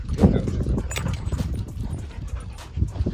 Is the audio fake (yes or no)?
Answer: yes